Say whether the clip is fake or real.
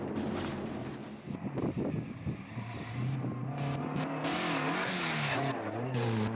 real